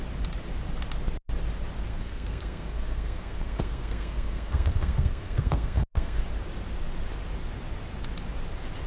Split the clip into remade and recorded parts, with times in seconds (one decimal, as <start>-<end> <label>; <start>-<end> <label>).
0.0-1.9 recorded; 1.9-6.2 remade; 6.2-8.9 recorded